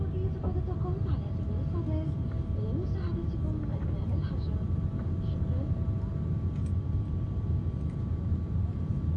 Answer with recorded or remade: recorded